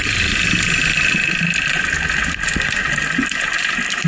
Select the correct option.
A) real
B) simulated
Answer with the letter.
A